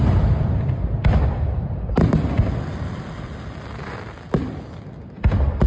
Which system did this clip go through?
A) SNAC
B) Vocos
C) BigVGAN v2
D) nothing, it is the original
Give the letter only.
D